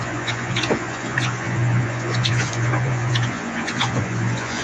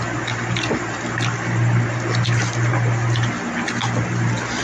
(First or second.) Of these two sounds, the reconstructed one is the first